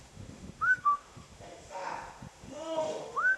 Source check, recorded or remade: remade